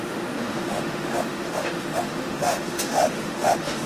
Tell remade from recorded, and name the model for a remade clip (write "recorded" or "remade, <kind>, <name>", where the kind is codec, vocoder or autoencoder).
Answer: remade, autoencoder, DAC-VAE